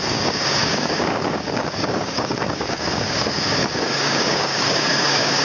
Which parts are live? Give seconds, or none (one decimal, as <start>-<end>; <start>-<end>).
none